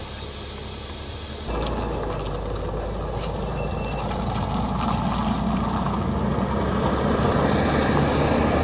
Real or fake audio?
real